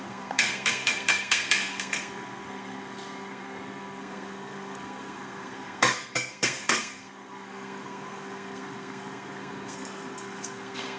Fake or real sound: fake